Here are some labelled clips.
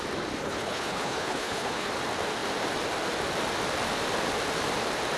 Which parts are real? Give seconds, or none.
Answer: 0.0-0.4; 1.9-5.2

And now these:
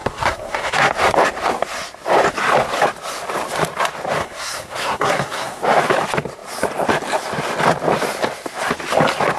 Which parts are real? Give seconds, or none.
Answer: 0.9-4.2; 5.6-9.4

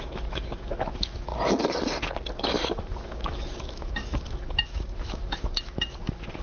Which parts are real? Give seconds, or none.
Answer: 1.3-2.3

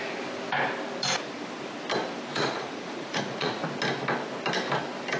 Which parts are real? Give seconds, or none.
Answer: 0.0-2.3; 3.7-5.2

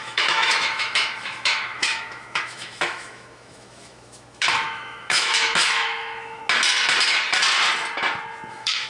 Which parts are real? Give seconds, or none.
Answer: 6.4-8.5

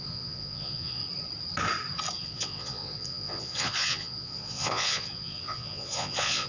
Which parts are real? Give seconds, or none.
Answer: 1.0-2.2

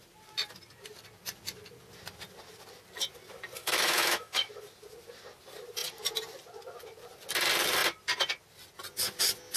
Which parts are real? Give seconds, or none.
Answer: 0.0-3.6; 4.5-9.6